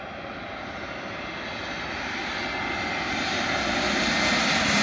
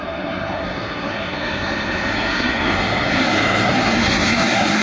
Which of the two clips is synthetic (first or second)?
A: second